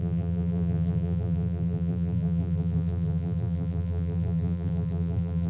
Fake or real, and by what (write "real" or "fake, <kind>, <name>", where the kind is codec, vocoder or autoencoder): fake, vocoder, BigVGAN v2